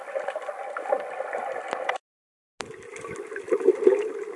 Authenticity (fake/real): real